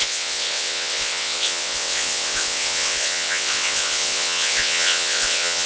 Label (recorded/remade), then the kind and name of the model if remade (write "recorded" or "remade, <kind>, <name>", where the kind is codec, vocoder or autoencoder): remade, vocoder, WaveNeXt